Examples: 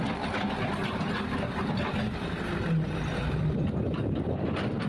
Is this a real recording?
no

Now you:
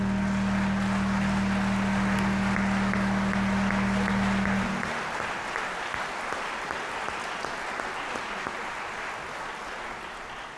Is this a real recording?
yes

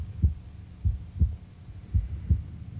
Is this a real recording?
yes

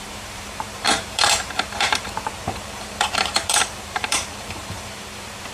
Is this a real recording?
no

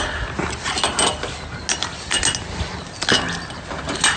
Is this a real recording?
yes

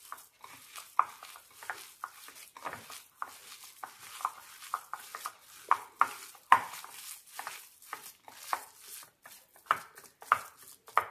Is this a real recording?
yes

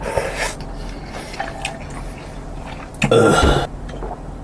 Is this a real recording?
yes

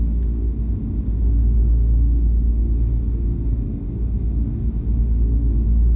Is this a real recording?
yes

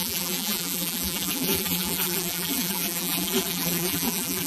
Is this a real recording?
no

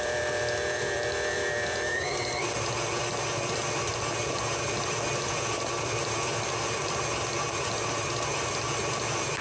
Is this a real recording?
no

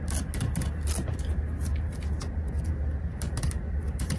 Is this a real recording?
yes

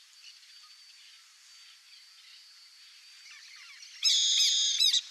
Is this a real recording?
yes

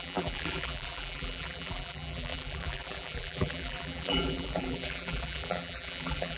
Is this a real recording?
no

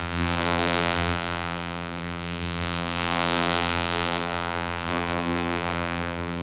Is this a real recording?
no